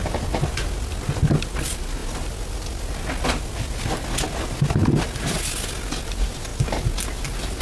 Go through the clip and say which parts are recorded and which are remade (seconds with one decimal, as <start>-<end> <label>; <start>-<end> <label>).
0.0-7.6 recorded